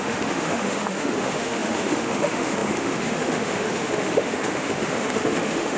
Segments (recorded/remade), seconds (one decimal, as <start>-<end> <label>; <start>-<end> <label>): 0.0-5.8 remade